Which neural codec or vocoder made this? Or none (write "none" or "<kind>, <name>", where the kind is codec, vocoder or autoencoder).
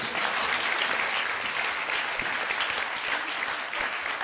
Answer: none